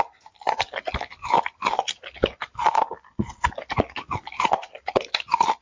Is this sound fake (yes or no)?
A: no